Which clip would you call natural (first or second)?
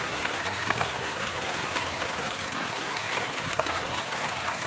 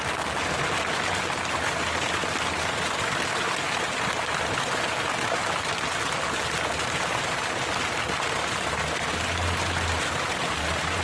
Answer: second